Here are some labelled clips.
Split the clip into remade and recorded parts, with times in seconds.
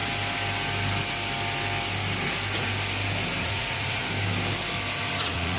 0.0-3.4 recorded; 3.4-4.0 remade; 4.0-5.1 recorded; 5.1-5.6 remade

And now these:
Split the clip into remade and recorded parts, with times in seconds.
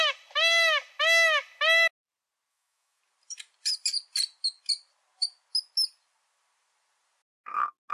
0.0-2.5 recorded; 2.5-3.0 remade; 3.0-7.9 recorded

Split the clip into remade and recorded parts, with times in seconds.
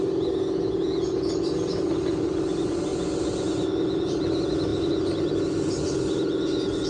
0.0-4.7 recorded; 4.7-5.3 remade; 5.3-6.9 recorded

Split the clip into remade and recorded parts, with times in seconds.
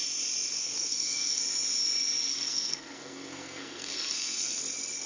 0.0-0.6 recorded; 0.6-1.4 remade; 1.4-2.3 recorded; 2.3-4.6 remade; 4.6-5.1 recorded